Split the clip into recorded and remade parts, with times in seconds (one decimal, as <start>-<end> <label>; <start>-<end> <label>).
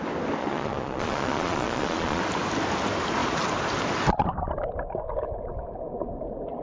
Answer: 0.0-0.4 recorded; 0.4-2.2 remade; 2.2-6.6 recorded